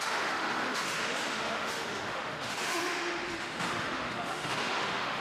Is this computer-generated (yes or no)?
yes